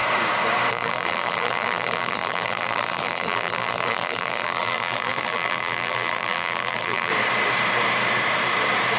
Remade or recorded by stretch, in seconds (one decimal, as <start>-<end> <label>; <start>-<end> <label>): 0.0-0.7 recorded; 0.7-7.1 remade; 7.1-9.0 recorded